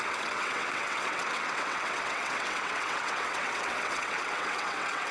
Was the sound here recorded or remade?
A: remade